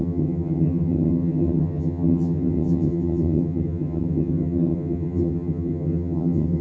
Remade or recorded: remade